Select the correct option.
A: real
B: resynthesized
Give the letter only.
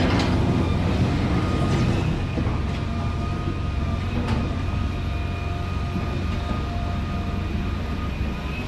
A